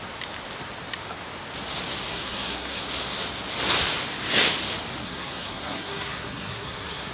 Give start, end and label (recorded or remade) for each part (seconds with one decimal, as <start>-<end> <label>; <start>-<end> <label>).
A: 0.0-2.1 recorded; 2.1-2.9 remade; 2.9-5.0 recorded; 5.0-7.1 remade

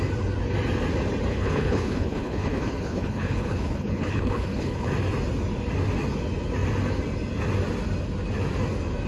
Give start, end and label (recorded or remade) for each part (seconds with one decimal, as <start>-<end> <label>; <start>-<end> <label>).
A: 0.0-1.3 recorded; 1.3-4.9 remade; 4.9-9.1 recorded

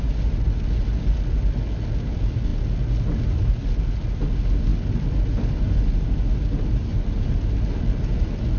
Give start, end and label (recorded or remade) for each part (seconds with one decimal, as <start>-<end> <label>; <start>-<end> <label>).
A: 0.0-8.6 recorded